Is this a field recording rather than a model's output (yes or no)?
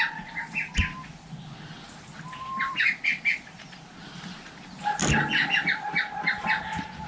yes